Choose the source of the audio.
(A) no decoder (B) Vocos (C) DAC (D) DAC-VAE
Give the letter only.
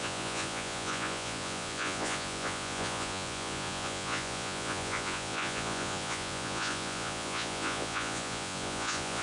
B